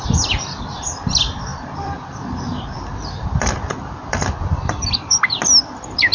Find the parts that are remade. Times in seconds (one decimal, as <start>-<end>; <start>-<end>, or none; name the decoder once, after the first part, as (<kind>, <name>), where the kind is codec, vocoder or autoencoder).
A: 1.5-5.2 (vocoder, BigVGAN v2)